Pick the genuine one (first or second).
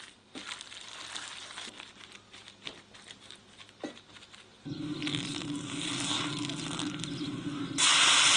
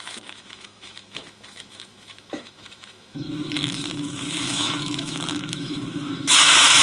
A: first